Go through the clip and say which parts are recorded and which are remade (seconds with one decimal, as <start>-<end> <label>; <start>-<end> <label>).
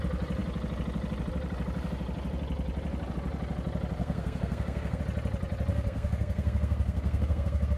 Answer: 0.0-4.0 recorded; 4.0-5.0 remade; 5.0-5.7 recorded; 5.7-7.8 remade